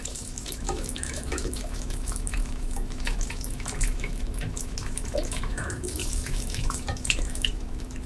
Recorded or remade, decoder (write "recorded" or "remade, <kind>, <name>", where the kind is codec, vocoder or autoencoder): remade, autoencoder, DAC-VAE